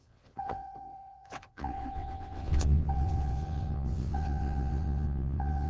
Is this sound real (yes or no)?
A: no